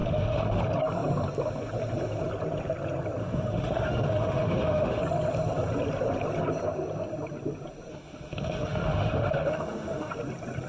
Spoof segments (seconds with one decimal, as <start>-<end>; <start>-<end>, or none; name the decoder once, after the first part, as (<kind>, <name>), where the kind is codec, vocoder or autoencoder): 0.0-0.6 (autoencoder, DAC-VAE); 3.2-5.0; 7.9-10.1